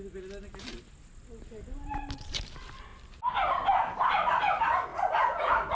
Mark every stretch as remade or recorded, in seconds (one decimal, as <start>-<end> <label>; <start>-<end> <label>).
0.0-4.9 recorded; 4.9-5.7 remade